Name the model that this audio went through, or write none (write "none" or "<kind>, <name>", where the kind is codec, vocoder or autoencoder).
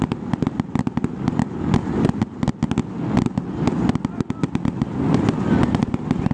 none